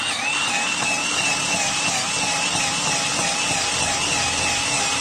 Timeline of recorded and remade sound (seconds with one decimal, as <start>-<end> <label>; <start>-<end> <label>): 0.0-5.0 recorded